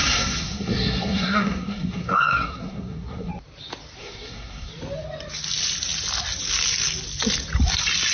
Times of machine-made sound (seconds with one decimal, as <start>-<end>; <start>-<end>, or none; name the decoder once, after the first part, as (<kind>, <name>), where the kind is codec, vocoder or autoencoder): 0.0-3.3 (codec, SNAC); 4.0-4.7